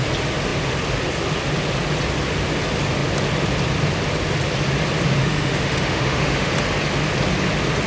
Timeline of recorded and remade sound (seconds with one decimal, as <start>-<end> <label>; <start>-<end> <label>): 0.0-5.2 recorded; 5.2-6.5 remade; 6.5-7.9 recorded